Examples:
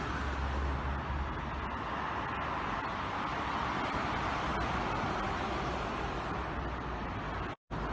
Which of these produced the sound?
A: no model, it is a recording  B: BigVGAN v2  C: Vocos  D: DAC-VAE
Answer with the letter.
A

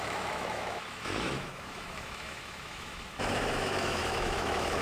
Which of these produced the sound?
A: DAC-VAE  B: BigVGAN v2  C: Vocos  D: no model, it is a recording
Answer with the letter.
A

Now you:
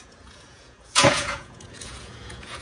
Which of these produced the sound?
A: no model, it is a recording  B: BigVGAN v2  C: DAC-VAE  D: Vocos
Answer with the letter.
D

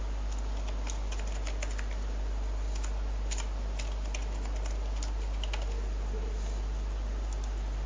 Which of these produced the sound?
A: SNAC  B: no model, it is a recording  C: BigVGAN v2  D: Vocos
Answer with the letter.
B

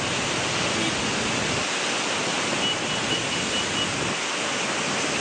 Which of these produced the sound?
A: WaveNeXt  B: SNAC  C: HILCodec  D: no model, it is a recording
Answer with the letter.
D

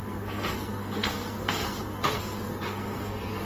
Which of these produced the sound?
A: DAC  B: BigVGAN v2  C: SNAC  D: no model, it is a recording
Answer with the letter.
C